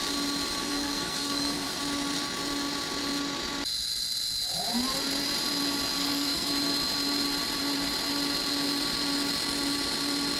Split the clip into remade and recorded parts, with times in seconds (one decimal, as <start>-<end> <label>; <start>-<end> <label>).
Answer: 0.0-0.6 recorded; 0.6-1.8 remade; 1.8-6.0 recorded; 6.0-6.5 remade; 6.5-10.4 recorded